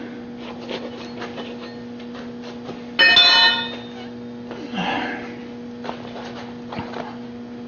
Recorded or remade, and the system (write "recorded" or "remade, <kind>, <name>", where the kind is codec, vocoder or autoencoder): recorded